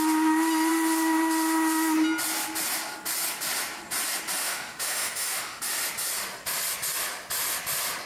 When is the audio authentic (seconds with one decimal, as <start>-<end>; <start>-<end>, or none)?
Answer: 0.0-4.4; 5.6-8.1